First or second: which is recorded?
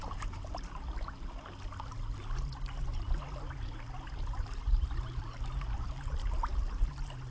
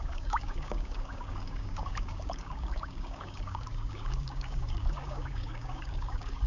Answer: first